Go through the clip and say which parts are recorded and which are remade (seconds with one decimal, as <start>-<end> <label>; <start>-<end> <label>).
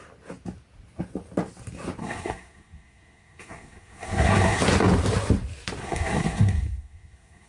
0.0-2.0 recorded; 2.0-4.6 remade; 4.6-5.8 recorded; 5.8-7.5 remade